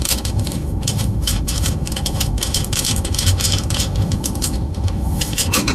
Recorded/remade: remade